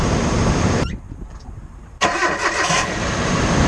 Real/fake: fake